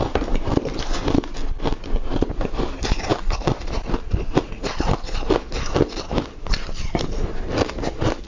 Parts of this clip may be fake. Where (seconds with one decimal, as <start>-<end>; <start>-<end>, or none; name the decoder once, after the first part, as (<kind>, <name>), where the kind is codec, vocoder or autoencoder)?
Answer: none